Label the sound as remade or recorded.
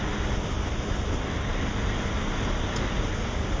recorded